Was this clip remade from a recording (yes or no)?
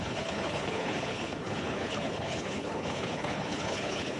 yes